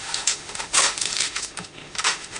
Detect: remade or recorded remade